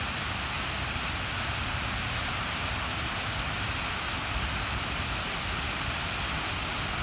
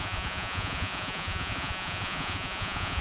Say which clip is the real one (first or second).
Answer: first